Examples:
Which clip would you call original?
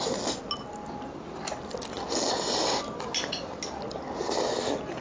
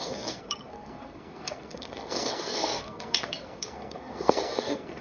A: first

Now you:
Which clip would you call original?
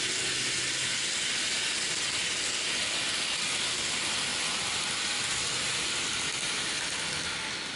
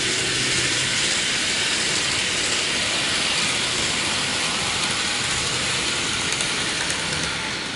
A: first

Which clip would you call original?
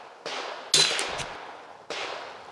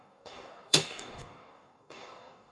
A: first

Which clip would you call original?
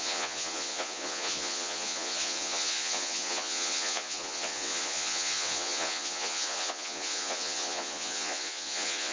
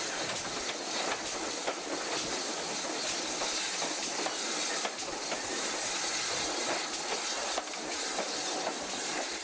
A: second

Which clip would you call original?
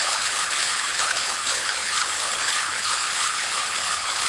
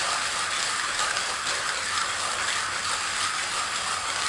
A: second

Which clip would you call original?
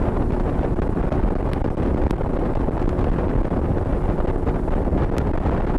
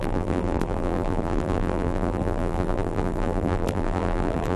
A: first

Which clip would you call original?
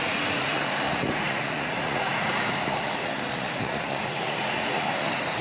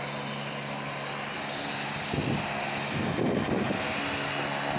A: second